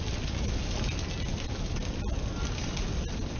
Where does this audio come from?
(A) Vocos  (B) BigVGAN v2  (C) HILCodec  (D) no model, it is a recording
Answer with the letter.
D